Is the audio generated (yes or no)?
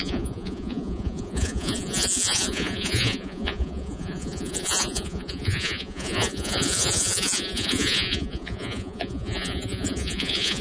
yes